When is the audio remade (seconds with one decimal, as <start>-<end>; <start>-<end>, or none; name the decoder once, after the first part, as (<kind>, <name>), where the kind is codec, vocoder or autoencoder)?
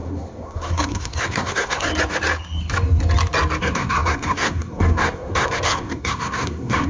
0.0-1.9 (codec, SNAC); 3.6-6.9